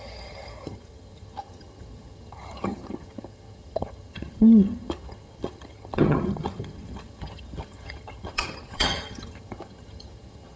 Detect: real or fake fake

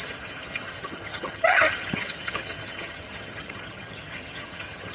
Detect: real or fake fake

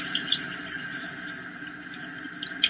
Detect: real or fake real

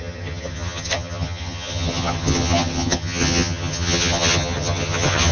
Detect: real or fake fake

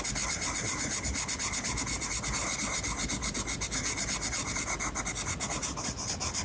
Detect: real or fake real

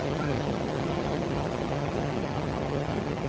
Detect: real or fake fake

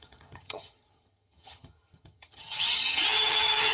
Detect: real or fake fake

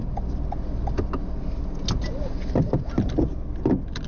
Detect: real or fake real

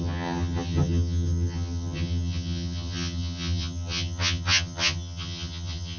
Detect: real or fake fake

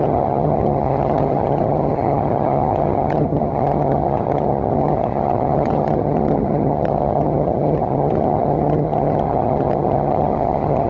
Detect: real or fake fake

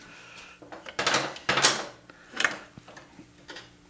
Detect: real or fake real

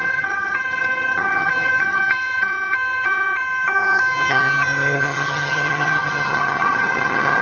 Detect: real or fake fake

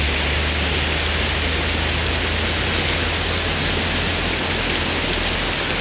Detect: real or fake real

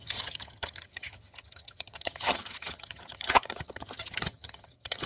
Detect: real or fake fake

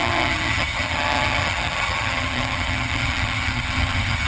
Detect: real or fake fake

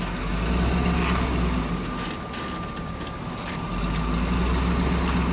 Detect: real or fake real